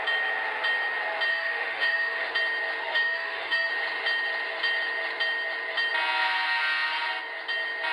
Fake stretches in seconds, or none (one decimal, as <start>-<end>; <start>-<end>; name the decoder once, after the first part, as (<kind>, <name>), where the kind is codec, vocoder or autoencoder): 1.3-2.3 (autoencoder, DAC-VAE); 2.9-3.7